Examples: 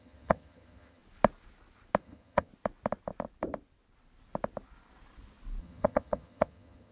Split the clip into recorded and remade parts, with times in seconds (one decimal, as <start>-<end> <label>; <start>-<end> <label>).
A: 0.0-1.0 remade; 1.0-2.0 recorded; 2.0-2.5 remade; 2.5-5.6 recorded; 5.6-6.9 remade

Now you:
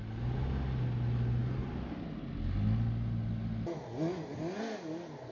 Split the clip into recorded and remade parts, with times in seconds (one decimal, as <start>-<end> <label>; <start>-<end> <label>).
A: 0.0-5.3 recorded

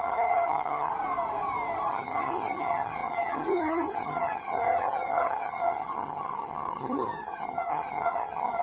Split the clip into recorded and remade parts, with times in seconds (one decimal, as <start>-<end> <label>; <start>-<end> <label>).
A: 0.0-0.9 remade; 0.9-1.9 recorded; 1.9-8.6 remade

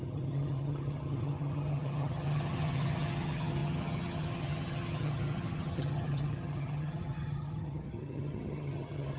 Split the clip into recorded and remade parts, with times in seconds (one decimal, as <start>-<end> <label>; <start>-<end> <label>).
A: 0.0-9.2 remade

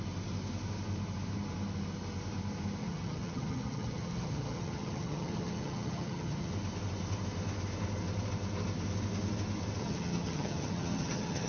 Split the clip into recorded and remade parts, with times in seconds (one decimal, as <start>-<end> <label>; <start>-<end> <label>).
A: 0.0-2.8 recorded; 2.8-6.5 remade; 6.5-9.8 recorded; 9.8-11.5 remade